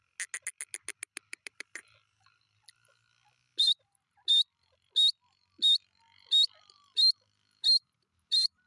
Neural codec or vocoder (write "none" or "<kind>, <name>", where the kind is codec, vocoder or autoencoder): none